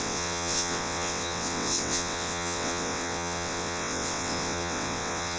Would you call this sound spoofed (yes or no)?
yes